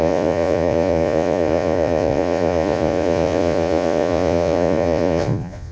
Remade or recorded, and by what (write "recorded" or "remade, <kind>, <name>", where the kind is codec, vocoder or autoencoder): remade, vocoder, Vocos